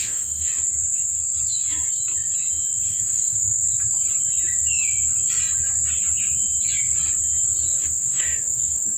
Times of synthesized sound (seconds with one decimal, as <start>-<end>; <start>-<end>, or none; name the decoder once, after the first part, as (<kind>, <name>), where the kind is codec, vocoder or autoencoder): 0.0-0.5 (autoencoder, DAC-VAE); 2.9-3.6; 7.8-9.0